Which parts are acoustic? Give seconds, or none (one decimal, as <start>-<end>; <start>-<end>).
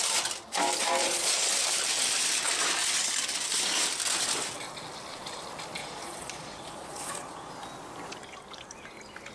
0.0-1.0; 1.5-5.8; 7.5-9.3